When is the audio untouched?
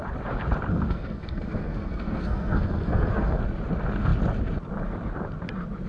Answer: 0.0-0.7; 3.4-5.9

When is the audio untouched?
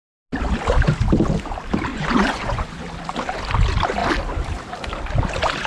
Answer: 0.0-1.9; 2.8-5.7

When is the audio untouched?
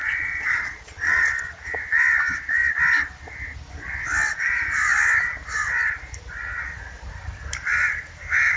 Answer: 1.3-8.6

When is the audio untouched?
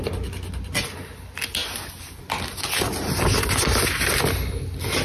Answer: 0.0-5.0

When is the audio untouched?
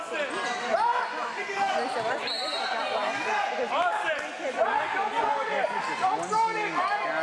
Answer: 0.0-7.2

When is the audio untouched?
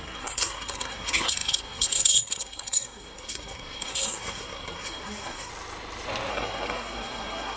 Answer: 5.5-6.3